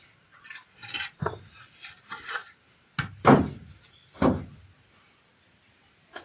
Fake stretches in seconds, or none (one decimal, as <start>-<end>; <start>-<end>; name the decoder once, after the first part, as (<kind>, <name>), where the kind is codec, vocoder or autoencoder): 0.8-2.9 (vocoder, BigVGAN v2)